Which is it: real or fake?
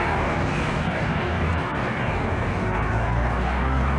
fake